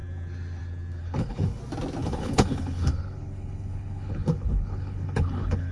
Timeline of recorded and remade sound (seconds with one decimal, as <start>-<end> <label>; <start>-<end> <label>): 0.0-1.0 recorded; 1.0-1.6 remade; 1.6-2.0 recorded; 2.0-5.7 remade